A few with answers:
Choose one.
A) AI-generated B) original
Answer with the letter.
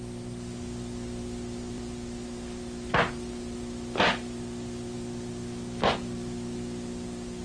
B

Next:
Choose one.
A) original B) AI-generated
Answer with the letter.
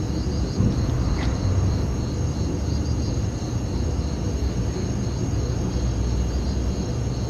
A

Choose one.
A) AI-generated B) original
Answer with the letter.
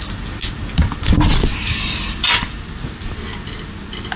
B